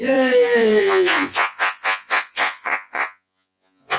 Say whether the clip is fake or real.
fake